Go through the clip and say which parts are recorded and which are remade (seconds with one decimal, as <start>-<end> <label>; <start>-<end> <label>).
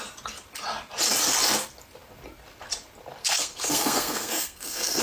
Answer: 0.0-3.2 recorded; 3.2-5.0 remade